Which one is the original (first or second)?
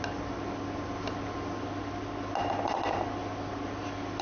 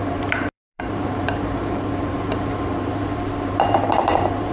first